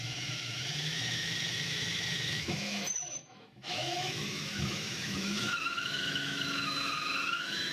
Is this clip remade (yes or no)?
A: yes